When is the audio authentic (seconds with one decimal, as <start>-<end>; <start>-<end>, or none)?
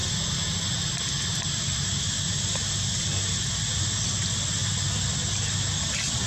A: 0.0-6.3